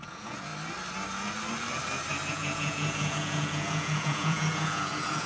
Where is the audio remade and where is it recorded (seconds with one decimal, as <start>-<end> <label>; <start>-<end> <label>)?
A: 0.0-0.5 remade; 0.5-2.3 recorded; 2.3-5.3 remade

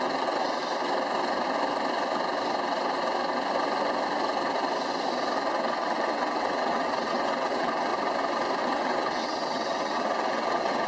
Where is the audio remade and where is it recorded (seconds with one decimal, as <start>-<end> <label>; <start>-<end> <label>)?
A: 0.0-0.6 remade; 0.6-5.5 recorded; 5.5-7.9 remade; 7.9-8.6 recorded; 8.6-10.9 remade

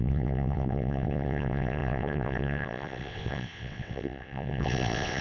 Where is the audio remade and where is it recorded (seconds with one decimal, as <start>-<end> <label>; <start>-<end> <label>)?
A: 0.0-5.2 remade